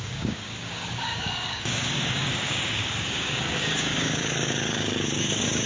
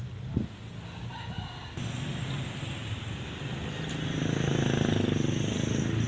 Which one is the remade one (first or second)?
first